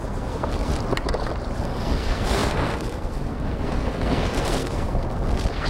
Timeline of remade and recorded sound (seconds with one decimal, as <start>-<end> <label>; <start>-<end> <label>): 0.0-0.7 remade; 0.7-1.6 recorded; 1.6-5.7 remade